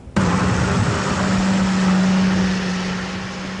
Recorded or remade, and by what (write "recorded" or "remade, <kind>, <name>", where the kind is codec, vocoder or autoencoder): recorded